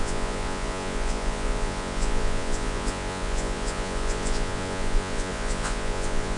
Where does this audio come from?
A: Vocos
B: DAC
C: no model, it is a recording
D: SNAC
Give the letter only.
A